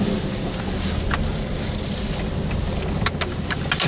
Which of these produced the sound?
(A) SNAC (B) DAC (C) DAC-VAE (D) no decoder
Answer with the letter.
D